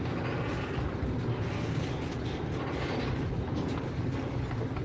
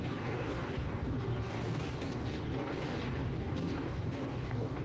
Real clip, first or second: first